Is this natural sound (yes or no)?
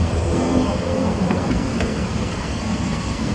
no